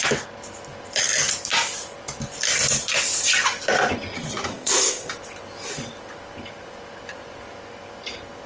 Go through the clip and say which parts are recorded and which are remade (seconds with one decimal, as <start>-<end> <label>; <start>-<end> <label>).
0.0-4.5 recorded; 4.5-5.1 remade; 5.1-8.5 recorded